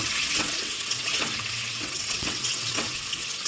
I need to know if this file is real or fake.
fake